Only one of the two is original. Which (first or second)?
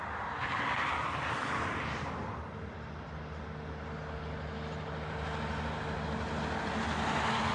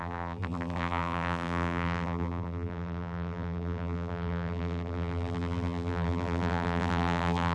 first